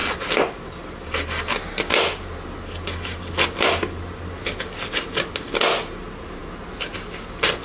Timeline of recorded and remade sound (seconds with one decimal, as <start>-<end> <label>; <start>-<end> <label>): 0.0-7.6 recorded